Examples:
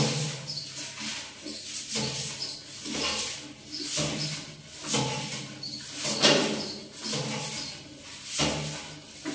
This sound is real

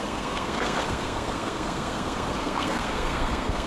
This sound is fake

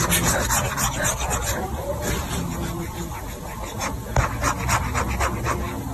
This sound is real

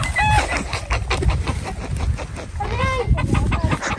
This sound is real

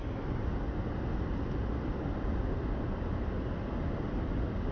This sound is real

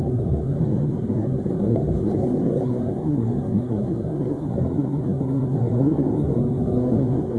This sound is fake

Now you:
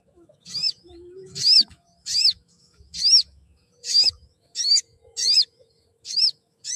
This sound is fake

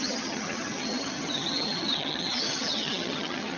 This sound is fake